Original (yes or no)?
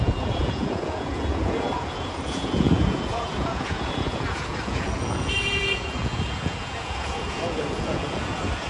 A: no